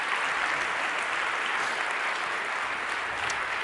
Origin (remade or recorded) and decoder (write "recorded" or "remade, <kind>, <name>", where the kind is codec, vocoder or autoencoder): recorded